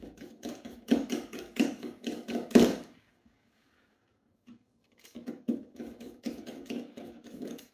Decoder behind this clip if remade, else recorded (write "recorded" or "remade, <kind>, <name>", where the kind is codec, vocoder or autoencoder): remade, codec, DAC